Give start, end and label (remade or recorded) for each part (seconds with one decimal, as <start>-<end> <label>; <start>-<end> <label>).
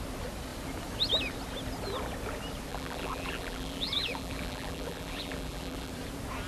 0.0-2.7 recorded; 2.7-5.9 remade; 5.9-6.5 recorded